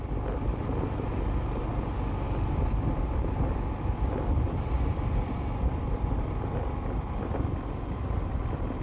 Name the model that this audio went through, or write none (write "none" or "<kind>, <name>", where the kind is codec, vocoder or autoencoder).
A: none